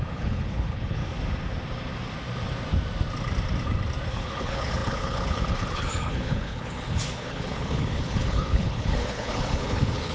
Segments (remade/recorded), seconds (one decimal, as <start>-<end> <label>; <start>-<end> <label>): 0.0-1.0 remade; 1.0-4.1 recorded; 4.1-10.1 remade